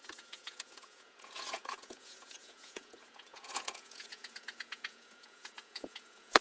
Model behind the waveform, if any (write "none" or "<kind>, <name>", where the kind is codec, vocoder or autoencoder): vocoder, Vocos